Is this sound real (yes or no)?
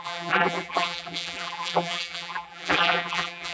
no